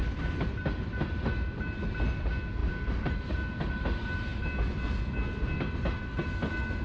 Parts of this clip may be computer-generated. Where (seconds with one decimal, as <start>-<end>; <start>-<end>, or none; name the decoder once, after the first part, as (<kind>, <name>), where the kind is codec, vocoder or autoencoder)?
none